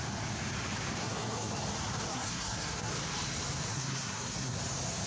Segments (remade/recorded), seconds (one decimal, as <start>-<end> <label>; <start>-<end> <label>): 0.0-1.0 recorded; 1.0-1.5 remade; 1.5-2.1 recorded; 2.1-2.9 remade; 2.9-3.7 recorded; 3.7-4.6 remade; 4.6-5.1 recorded